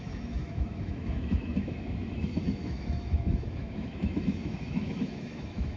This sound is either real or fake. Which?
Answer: fake